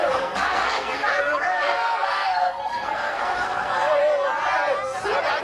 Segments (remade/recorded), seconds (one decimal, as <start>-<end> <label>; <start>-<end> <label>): 0.0-4.0 remade; 4.0-5.4 recorded